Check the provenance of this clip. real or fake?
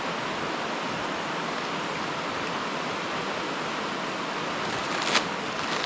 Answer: real